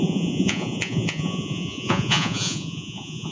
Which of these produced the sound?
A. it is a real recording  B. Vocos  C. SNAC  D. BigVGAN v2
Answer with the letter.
B